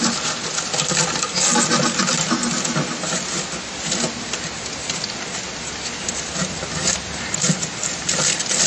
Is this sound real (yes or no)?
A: yes